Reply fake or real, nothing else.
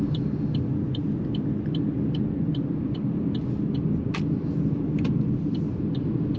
real